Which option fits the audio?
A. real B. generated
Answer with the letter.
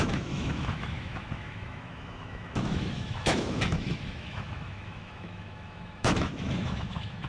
B